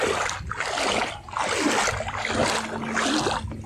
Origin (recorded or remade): recorded